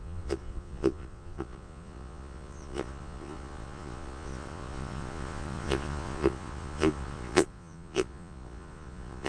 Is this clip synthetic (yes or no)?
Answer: yes